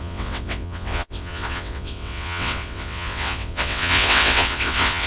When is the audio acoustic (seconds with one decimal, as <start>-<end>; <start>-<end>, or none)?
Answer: none